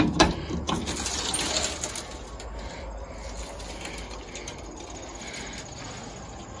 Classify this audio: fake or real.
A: real